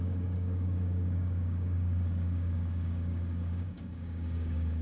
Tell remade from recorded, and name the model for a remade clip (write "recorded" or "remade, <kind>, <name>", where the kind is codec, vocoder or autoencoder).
remade, codec, DAC